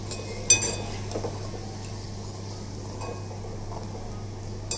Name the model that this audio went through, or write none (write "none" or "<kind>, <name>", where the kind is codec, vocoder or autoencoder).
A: none